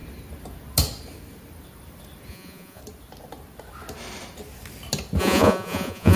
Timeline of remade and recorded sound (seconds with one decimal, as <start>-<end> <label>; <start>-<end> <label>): 0.0-2.3 recorded; 2.3-2.8 remade; 2.8-5.2 recorded; 5.2-6.2 remade